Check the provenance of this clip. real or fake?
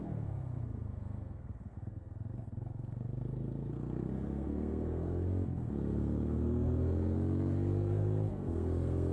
fake